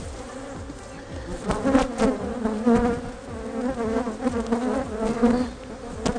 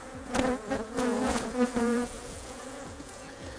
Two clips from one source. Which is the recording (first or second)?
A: first